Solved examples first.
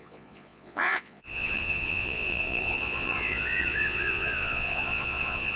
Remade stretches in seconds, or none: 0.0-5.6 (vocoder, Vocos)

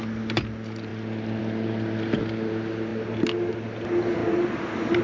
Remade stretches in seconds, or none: none